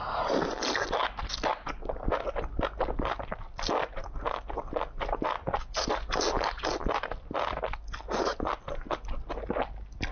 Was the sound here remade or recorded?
recorded